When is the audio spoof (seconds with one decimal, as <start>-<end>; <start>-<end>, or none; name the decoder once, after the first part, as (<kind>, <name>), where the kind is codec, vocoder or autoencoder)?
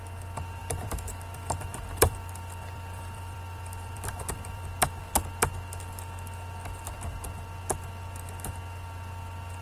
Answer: 0.6-4.7 (vocoder, BigVGAN v2)